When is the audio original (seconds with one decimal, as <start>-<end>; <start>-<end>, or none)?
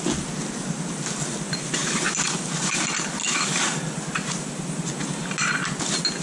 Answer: 0.0-3.2; 3.7-6.2